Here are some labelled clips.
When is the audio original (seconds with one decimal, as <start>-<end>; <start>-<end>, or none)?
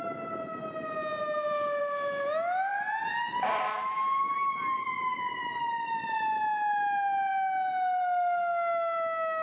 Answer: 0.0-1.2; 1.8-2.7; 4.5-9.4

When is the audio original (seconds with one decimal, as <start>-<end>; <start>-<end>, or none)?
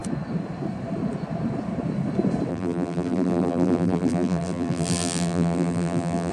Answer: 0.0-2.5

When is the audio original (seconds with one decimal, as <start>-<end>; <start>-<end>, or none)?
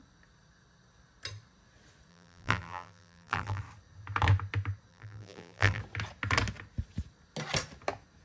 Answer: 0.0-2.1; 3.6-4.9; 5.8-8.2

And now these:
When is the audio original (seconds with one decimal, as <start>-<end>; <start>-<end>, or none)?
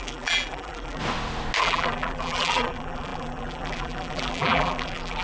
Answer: 1.0-1.6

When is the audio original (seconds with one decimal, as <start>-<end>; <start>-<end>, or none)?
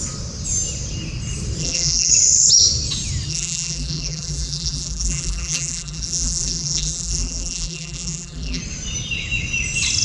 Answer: 0.0-1.6; 2.1-3.3; 8.6-10.0